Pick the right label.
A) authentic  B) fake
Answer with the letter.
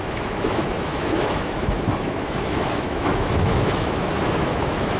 B